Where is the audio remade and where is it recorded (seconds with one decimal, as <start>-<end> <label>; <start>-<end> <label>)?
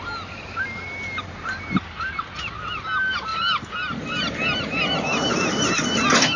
0.0-6.4 recorded